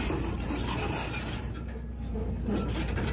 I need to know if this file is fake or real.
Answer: real